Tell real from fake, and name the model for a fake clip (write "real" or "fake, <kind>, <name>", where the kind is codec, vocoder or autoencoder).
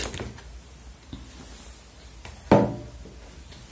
real